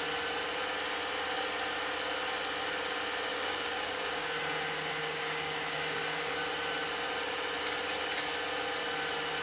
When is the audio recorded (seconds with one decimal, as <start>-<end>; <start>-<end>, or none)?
0.0-3.3; 4.4-5.0; 6.4-9.4